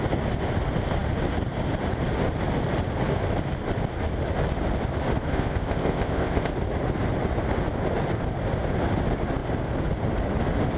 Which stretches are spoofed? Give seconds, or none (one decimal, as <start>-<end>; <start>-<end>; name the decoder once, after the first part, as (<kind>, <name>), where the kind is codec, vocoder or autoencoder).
5.3-6.5 (codec, ZipCodec)